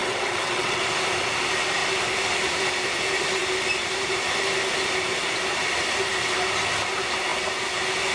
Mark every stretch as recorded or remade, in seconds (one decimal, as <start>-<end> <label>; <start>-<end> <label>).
0.0-0.8 remade; 0.8-8.1 recorded